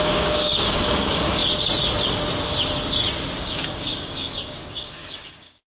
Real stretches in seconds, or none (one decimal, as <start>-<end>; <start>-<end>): 1.4-3.4